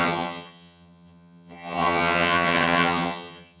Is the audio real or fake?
fake